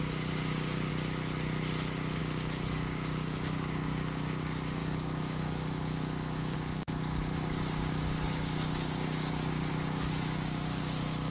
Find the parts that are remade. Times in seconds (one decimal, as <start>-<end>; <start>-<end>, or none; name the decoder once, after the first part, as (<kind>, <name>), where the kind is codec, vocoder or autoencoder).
0.0-0.9 (codec, DAC); 2.2-11.3